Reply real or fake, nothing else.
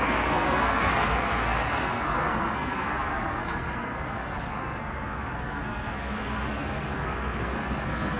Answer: fake